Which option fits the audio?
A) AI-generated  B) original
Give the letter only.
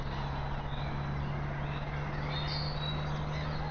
B